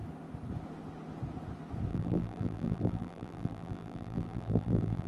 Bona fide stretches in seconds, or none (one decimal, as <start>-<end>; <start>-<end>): 0.0-1.9